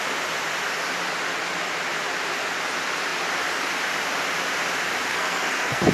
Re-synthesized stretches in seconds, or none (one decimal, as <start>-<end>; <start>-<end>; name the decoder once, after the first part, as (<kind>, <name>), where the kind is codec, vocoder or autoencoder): 5.1-5.9 (codec, SNAC)